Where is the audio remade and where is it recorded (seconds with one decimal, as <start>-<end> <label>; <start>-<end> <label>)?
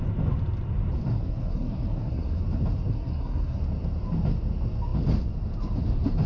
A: 0.0-1.1 recorded; 1.1-2.4 remade; 2.4-2.9 recorded; 2.9-3.6 remade; 3.6-6.3 recorded